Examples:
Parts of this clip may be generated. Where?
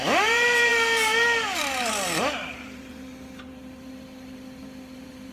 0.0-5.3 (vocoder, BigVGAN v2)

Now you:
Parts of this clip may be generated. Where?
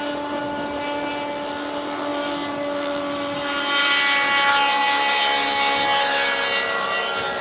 none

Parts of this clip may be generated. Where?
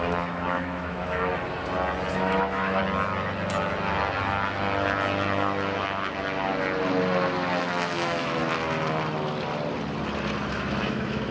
0.0-1.3 (autoencoder, DAC-VAE); 2.1-2.8; 7.6-8.4; 10.5-11.3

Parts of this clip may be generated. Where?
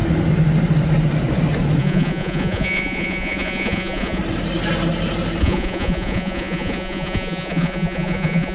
1.8-4.2 (vocoder, Vocos); 5.4-8.5